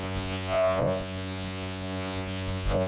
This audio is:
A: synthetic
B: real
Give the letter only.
A